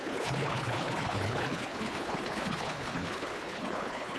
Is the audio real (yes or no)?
no